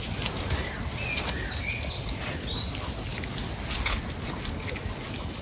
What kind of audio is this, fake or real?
real